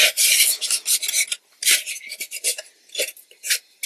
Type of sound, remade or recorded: recorded